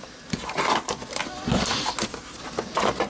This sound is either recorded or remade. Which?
recorded